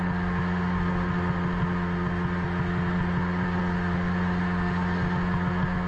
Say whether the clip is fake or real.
real